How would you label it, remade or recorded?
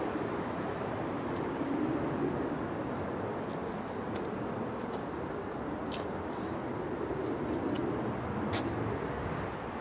recorded